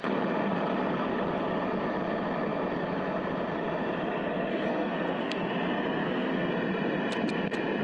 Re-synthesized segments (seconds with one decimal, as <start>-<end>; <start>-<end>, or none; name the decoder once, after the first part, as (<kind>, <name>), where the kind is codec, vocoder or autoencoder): 4.5-5.5 (codec, SNAC); 6.0-6.5